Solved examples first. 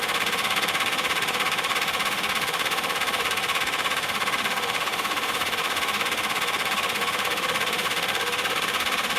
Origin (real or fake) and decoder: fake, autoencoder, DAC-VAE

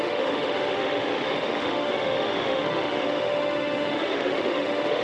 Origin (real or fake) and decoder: fake, autoencoder, DAC-VAE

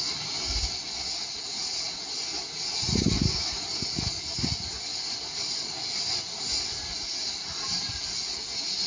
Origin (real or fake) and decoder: real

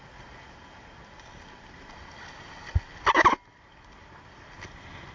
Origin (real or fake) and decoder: real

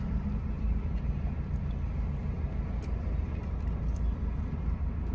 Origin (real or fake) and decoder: real